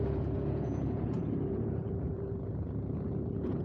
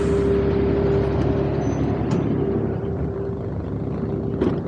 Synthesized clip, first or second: first